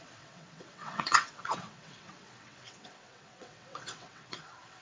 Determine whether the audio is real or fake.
fake